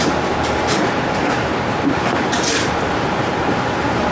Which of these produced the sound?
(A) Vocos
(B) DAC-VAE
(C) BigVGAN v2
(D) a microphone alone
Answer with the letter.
C